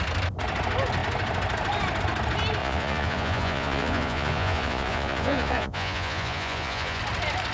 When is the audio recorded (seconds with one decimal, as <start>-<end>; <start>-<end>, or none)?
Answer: 0.0-2.6; 7.0-7.5